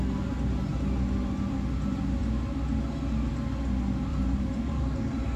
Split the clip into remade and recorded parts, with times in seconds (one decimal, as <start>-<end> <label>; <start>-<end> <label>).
0.0-4.1 recorded; 4.1-4.8 remade; 4.8-5.4 recorded